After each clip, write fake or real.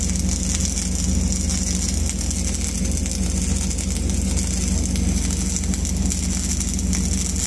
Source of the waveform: real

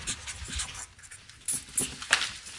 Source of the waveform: real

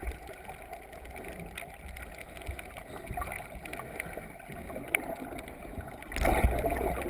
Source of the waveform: real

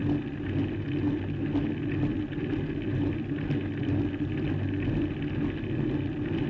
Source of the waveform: real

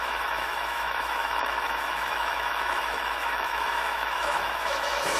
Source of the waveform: fake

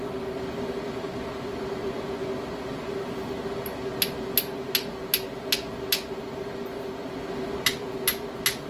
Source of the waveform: real